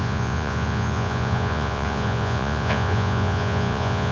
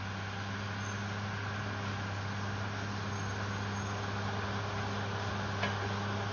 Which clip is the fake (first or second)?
first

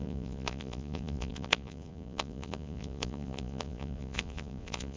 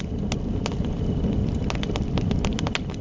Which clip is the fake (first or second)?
first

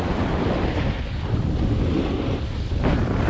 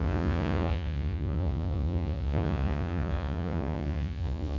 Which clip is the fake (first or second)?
second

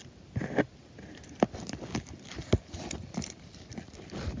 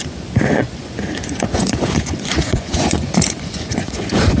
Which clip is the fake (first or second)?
second